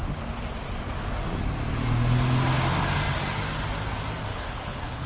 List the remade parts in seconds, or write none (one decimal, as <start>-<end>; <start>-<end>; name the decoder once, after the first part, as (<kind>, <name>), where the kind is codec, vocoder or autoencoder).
4.3-5.1 (codec, HILCodec)